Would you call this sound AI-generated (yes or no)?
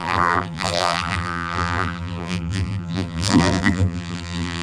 yes